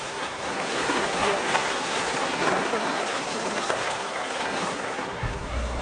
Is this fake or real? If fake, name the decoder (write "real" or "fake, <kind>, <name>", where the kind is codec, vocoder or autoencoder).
fake, codec, SNAC